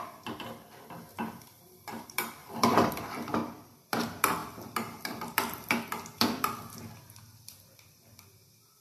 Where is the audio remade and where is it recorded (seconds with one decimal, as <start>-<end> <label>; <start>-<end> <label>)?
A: 0.0-2.4 recorded; 2.4-2.9 remade; 2.9-3.4 recorded; 3.4-3.9 remade; 3.9-8.8 recorded